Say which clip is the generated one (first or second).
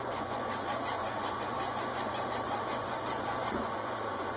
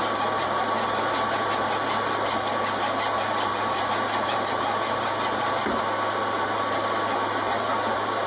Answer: first